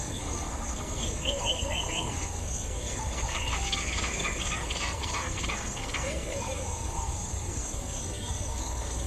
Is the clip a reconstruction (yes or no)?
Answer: yes